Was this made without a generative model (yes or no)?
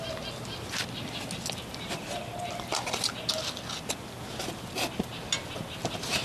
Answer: yes